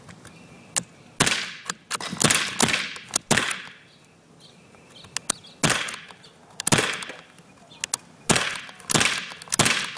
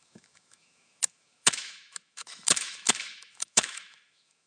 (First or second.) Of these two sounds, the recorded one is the first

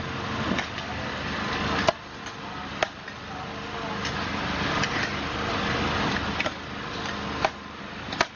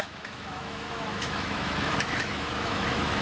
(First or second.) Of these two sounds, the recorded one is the first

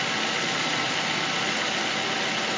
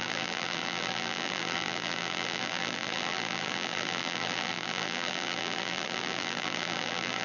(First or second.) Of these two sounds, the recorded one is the first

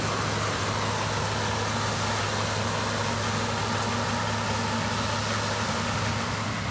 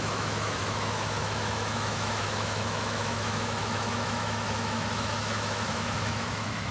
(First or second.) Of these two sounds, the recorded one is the first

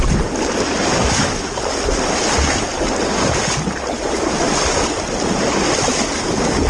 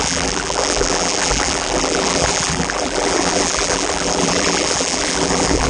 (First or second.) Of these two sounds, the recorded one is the first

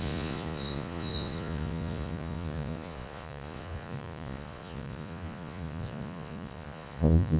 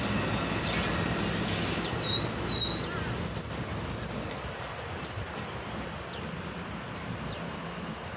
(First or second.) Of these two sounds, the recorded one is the second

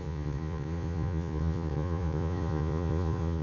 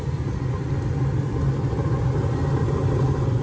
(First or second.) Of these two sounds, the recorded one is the second